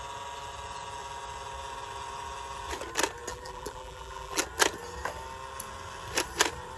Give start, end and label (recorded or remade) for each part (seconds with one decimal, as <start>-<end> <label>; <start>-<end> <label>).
0.0-3.3 recorded; 3.3-4.4 remade; 4.4-6.8 recorded